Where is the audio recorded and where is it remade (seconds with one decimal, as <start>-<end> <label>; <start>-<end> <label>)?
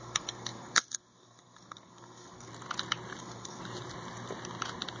0.0-2.5 remade; 2.5-3.2 recorded; 3.2-3.6 remade; 3.6-5.0 recorded